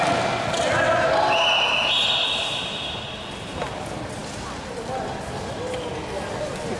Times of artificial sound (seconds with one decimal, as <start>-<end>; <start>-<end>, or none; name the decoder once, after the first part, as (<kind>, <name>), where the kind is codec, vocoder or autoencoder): none